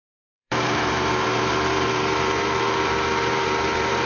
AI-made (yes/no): yes